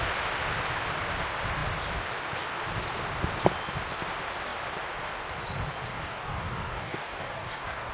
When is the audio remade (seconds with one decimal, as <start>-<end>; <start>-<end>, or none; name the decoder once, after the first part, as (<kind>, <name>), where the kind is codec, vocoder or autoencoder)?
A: 5.9-7.9 (codec, DAC)